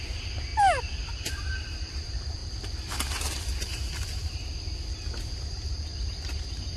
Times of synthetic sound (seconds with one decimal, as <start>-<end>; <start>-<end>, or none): 0.0-0.5; 1.3-2.4; 3.2-4.5; 5.3-6.8